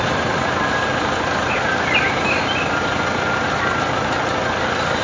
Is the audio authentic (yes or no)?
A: yes